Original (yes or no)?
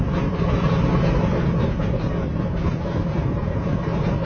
yes